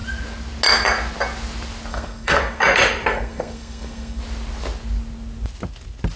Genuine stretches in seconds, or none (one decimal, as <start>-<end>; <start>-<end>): 0.0-1.9; 2.6-3.1; 4.2-6.2